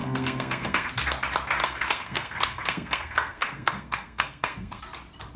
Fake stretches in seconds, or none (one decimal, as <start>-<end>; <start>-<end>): 0.0-0.9; 1.6-4.8